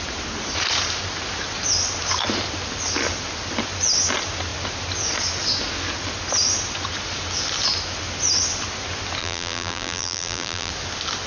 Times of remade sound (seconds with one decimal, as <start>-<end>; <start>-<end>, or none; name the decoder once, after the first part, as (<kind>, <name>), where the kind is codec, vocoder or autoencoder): 9.2-10.7 (vocoder, BigVGAN v2)